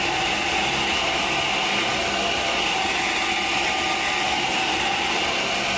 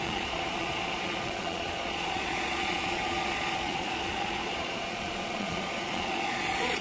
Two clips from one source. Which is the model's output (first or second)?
second